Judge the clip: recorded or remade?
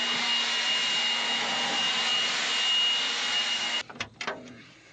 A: recorded